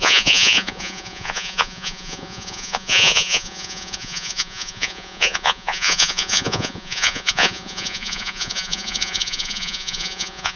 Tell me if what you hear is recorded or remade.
remade